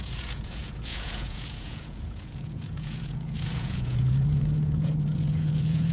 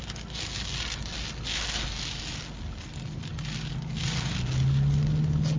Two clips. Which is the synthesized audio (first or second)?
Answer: first